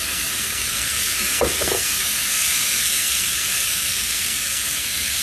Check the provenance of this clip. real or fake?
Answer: fake